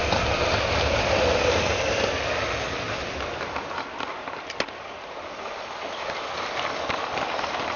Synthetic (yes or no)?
no